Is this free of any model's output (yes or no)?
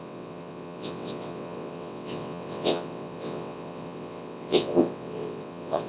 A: no